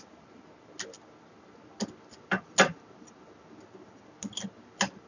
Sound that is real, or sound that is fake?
real